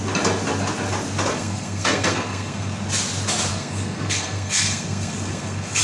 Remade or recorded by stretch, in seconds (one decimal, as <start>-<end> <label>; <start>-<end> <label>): 0.0-1.3 recorded; 1.3-2.8 remade; 2.8-3.5 recorded; 3.5-5.8 remade